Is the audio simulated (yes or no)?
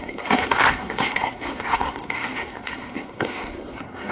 yes